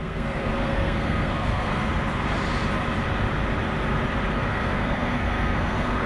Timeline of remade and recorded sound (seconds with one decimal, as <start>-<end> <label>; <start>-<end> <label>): 0.0-1.9 remade; 1.9-4.3 recorded; 4.3-6.1 remade